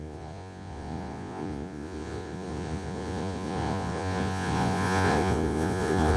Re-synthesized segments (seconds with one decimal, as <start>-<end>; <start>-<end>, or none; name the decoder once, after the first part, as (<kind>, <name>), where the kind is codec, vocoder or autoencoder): 0.0-6.2 (vocoder, Vocos)